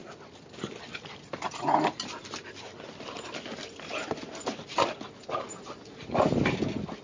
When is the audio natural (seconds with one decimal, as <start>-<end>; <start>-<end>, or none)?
0.0-7.0